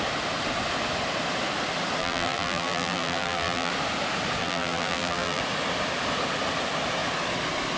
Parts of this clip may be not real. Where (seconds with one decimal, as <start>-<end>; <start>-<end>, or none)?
2.0-3.7; 4.4-5.4